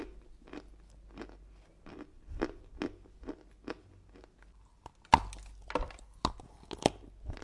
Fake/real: real